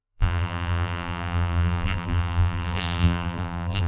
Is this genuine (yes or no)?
no